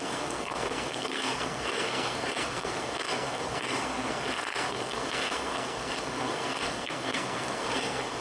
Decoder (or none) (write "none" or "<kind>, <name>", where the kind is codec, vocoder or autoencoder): codec, SNAC